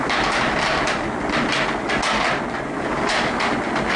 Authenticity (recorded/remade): recorded